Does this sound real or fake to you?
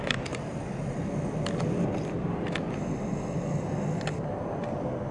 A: real